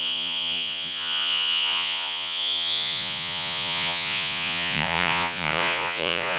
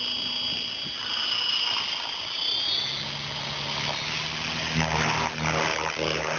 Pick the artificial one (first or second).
first